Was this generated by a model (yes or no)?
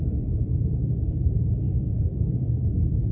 yes